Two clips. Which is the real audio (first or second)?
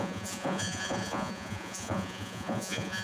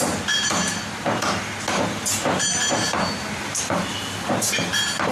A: second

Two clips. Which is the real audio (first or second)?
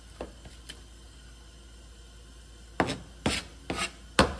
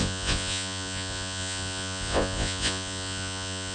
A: first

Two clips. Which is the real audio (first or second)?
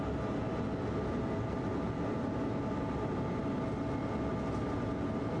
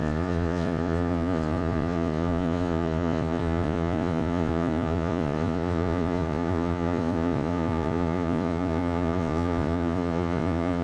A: first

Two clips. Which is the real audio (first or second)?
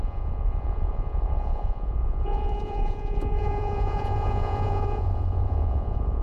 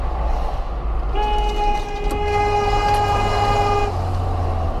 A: second